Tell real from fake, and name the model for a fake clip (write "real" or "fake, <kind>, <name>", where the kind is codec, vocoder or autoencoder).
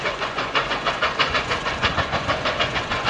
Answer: fake, vocoder, Vocos